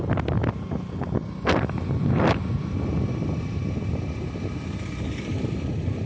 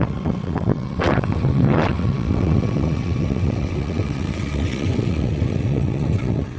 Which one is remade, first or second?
second